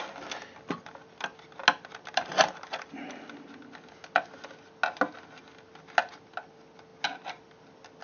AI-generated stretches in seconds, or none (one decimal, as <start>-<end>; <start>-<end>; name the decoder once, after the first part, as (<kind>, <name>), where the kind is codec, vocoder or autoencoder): none